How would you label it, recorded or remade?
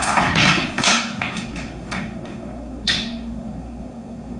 remade